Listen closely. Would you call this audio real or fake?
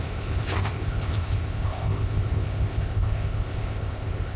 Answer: fake